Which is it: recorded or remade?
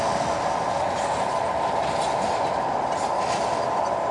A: recorded